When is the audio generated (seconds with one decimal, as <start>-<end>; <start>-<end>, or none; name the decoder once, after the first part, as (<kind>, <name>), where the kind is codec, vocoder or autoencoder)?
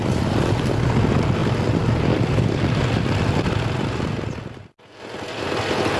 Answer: none